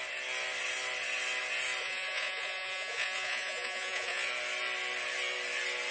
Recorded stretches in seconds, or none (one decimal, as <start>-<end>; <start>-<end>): 0.0-1.8; 4.3-5.9